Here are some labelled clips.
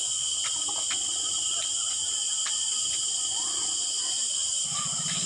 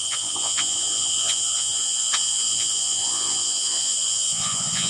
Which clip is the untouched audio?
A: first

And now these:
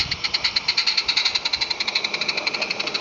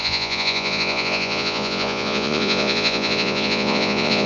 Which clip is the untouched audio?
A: first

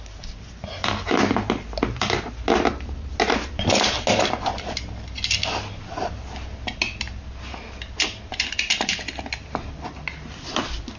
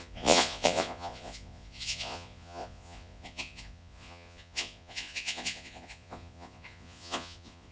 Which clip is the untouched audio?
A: first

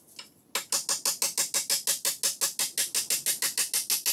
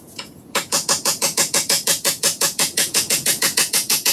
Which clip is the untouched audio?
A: first